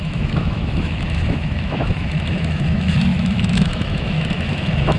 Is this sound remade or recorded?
remade